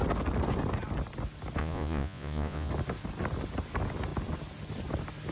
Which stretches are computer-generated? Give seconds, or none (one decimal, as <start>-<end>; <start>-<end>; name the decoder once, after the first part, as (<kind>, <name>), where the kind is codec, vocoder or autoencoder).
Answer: 1.6-2.7 (vocoder, Vocos)